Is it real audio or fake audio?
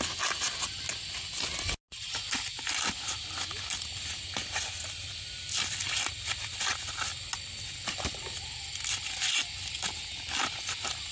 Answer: real